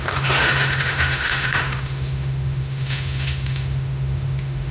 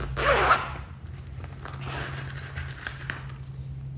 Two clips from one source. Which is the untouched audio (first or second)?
second